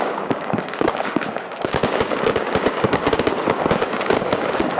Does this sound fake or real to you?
fake